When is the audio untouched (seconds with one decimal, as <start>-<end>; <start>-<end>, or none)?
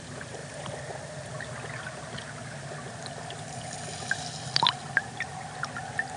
0.0-6.2